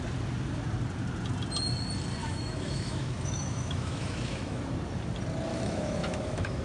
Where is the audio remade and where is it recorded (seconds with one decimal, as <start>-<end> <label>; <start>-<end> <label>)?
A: 0.0-2.2 recorded; 2.2-4.6 remade; 4.6-5.5 recorded; 5.5-6.6 remade